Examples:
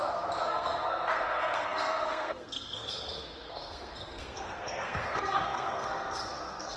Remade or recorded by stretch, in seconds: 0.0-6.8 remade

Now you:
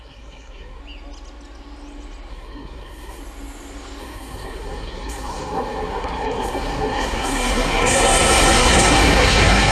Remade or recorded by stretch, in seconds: 0.0-0.8 remade; 0.8-2.3 recorded; 2.3-3.2 remade; 3.2-4.0 recorded; 4.0-9.7 remade

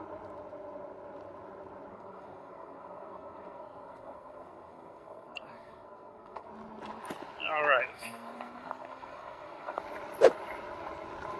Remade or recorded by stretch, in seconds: 0.0-1.9 recorded; 1.9-6.5 remade; 6.5-7.9 recorded; 7.9-9.8 remade; 9.8-11.4 recorded